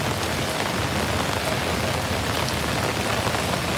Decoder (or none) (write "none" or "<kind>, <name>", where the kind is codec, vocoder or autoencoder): none